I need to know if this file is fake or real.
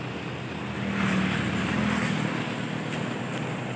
real